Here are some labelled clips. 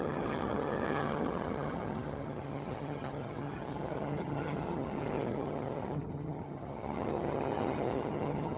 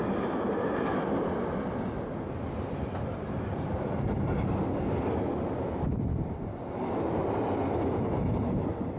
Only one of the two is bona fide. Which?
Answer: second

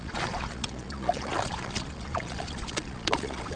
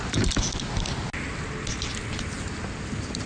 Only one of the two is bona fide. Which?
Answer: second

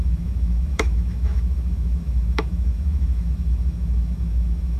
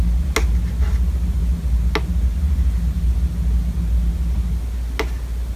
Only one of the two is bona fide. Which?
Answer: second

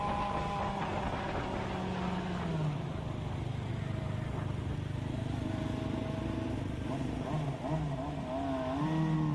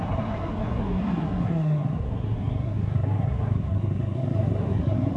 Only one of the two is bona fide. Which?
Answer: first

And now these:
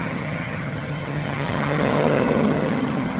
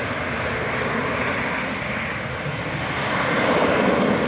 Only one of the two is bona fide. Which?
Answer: second